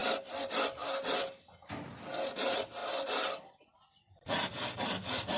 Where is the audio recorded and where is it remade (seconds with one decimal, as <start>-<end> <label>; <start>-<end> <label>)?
0.0-5.4 recorded